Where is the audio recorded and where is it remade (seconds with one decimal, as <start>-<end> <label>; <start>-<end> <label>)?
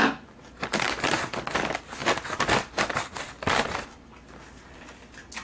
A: 0.0-5.4 recorded